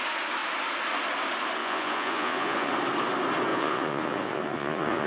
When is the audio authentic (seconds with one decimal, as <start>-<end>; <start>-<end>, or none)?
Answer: 0.0-1.6; 2.7-3.5